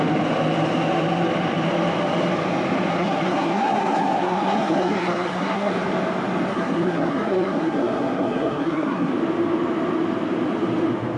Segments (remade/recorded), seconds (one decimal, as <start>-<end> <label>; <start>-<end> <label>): 0.0-2.9 recorded; 2.9-5.7 remade; 5.7-6.5 recorded; 6.5-9.1 remade; 9.1-11.2 recorded